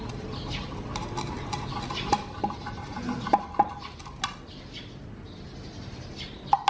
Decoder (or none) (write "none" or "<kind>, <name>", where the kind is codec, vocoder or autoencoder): none